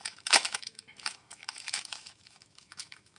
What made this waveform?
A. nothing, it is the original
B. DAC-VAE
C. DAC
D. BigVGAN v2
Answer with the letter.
B